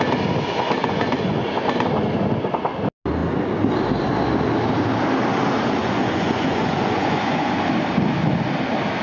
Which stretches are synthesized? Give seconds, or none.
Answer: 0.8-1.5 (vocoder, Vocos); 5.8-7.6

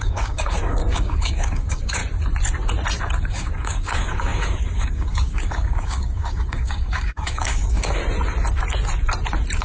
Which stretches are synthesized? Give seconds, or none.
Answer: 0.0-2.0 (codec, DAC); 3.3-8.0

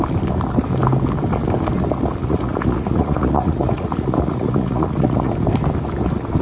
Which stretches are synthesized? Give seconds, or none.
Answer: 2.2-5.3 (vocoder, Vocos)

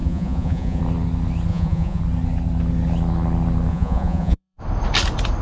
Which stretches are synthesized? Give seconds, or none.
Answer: 0.0-0.8 (vocoder, Vocos); 1.5-2.0; 3.7-4.6

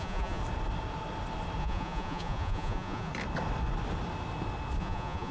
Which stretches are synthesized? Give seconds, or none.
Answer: 0.0-0.4 (vocoder, Vocos); 1.6-3.1; 4.8-5.3

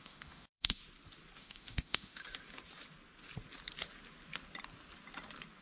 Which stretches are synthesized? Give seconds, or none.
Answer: 0.0-0.8 (autoencoder, DAC-VAE); 1.4-2.2